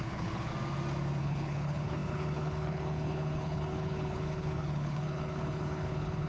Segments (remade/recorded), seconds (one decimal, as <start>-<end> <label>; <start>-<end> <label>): 0.0-0.5 remade; 0.5-1.2 recorded; 1.2-6.3 remade